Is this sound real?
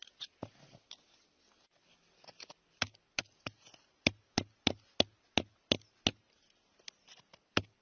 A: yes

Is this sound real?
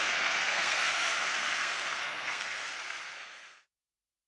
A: no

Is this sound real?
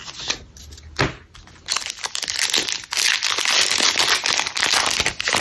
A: yes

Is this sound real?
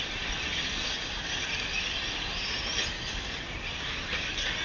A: yes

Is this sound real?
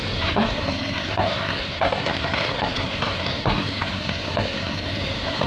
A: no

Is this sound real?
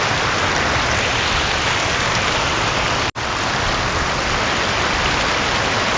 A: yes